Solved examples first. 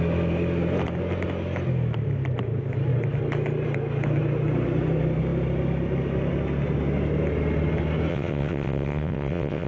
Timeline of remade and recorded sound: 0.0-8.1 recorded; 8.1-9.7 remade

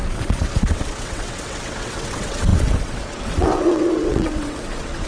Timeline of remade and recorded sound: 0.0-5.1 remade

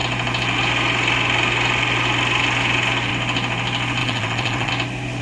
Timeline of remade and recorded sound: 0.0-4.0 recorded; 4.0-4.7 remade; 4.7-5.2 recorded

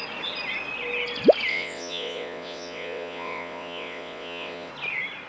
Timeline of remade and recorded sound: 0.0-1.5 recorded; 1.5-4.7 remade; 4.7-5.3 recorded

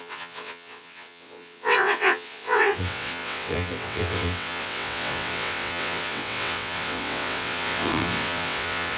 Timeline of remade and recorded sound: 0.0-9.0 remade